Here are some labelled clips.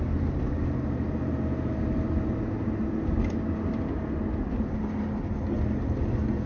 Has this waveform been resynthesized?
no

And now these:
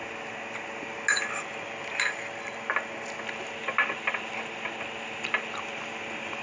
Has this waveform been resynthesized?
no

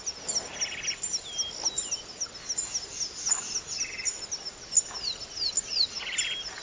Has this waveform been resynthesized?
no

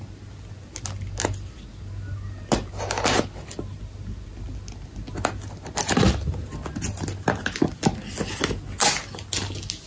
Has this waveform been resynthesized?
no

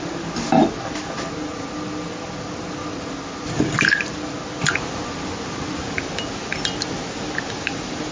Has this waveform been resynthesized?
no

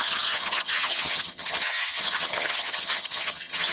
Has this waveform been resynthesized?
yes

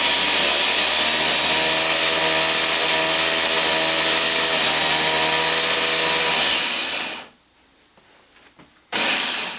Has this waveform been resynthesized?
no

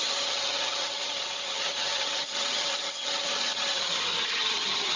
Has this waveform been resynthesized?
yes